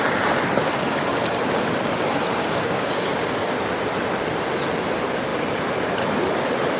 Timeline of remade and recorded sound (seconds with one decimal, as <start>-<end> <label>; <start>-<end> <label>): 0.0-2.3 recorded; 2.3-2.9 remade; 2.9-6.8 recorded

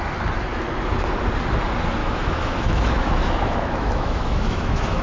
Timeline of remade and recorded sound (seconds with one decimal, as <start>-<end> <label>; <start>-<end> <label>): 0.0-2.0 recorded; 2.0-5.0 remade

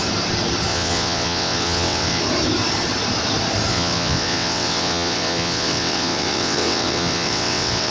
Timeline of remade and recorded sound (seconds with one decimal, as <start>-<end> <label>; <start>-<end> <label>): 0.0-0.7 recorded; 0.7-2.2 remade; 2.2-3.7 recorded; 3.7-7.9 remade

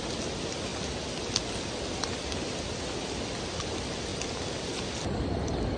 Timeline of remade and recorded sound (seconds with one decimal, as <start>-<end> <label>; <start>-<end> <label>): 0.0-4.1 recorded; 4.1-4.8 remade; 4.8-5.8 recorded